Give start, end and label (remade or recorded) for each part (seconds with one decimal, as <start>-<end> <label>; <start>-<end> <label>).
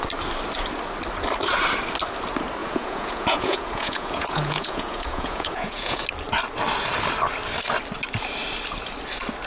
0.0-2.6 recorded; 2.6-6.0 remade; 6.0-9.5 recorded